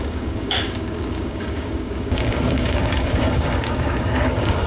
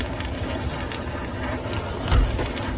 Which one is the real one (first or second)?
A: second